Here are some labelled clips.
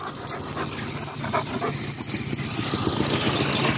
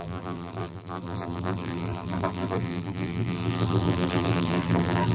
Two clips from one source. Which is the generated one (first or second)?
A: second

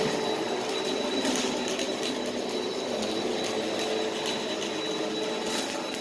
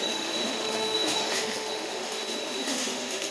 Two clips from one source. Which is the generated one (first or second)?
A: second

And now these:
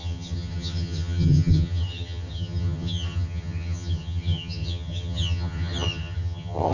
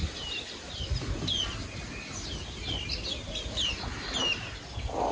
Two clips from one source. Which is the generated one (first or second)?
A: first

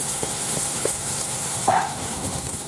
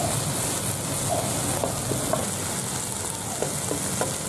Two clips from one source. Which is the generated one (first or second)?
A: first